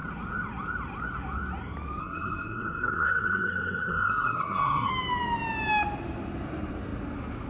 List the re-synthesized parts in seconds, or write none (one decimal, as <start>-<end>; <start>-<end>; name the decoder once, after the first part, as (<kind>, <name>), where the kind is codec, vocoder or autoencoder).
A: 2.0-4.9 (codec, SNAC)